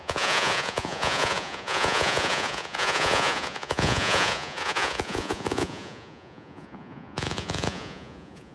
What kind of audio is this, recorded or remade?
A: remade